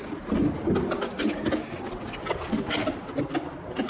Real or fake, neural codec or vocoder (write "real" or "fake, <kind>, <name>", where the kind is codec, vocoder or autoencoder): real